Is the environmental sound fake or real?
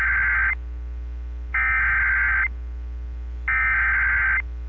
real